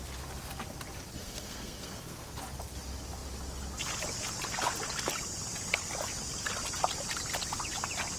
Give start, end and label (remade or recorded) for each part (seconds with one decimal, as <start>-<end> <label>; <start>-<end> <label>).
0.0-1.2 recorded; 1.2-2.3 remade; 2.3-8.2 recorded